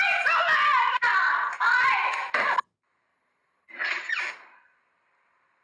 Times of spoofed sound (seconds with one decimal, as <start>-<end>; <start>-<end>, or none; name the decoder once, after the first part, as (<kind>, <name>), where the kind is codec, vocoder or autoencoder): 3.1-4.2 (vocoder, Vocos)